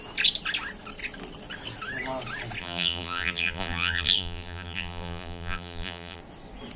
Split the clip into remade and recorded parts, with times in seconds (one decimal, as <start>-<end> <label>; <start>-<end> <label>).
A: 0.0-2.6 recorded; 2.6-6.2 remade; 6.2-6.8 recorded